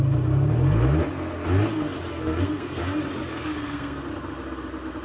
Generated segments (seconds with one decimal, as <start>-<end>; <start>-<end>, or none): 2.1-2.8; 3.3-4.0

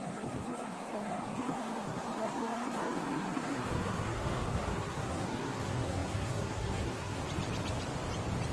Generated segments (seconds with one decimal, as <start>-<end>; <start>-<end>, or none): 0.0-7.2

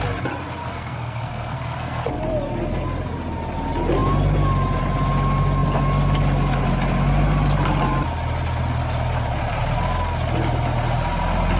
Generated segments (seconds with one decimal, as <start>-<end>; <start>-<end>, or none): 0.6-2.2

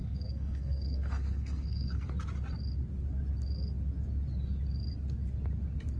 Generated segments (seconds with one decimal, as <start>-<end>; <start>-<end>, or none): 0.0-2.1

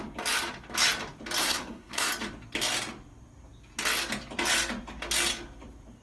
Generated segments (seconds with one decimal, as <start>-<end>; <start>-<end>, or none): 1.4-2.1

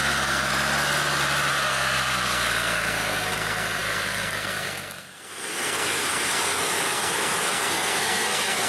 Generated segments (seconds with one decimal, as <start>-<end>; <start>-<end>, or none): 0.0-0.5; 1.5-8.7

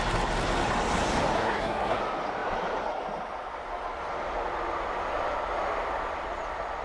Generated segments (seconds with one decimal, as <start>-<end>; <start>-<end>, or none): 1.4-2.0

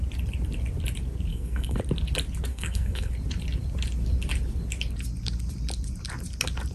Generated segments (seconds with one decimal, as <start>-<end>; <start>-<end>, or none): 1.3-1.8; 2.5-3.1